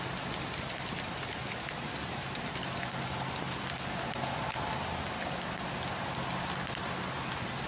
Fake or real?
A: real